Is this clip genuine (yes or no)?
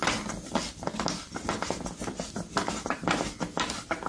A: yes